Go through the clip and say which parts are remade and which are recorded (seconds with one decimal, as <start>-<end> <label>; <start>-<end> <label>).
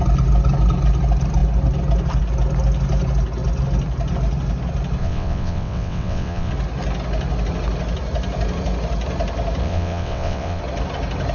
0.0-5.0 recorded; 5.0-6.5 remade; 6.5-9.6 recorded; 9.6-10.6 remade; 10.6-11.3 recorded